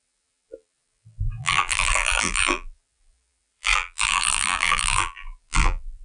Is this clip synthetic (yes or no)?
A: yes